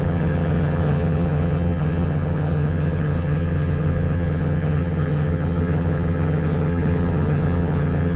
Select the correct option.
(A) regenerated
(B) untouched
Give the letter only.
A